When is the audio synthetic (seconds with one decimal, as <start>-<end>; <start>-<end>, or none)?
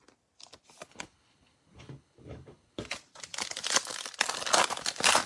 0.9-2.8